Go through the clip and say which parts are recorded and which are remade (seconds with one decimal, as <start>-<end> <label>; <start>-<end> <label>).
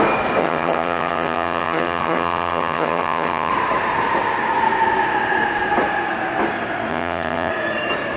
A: 0.0-0.4 recorded; 0.4-3.5 remade; 3.5-6.9 recorded; 6.9-7.5 remade; 7.5-8.2 recorded